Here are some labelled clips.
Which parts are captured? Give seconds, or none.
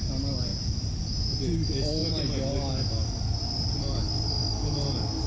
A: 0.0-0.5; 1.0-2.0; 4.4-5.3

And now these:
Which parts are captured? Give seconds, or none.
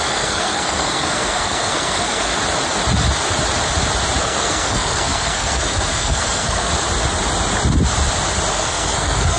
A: 2.3-4.2; 6.7-8.5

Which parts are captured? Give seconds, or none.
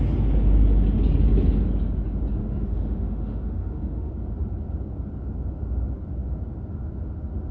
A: 0.0-2.4; 4.1-7.5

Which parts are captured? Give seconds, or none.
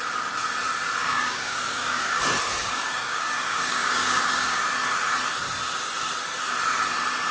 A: 0.0-1.0; 2.2-2.6; 4.6-7.3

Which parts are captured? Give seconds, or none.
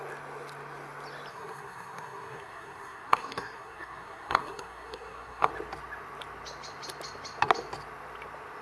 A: 0.0-1.3; 5.5-8.6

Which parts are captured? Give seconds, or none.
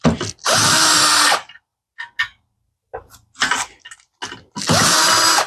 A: 0.0-5.5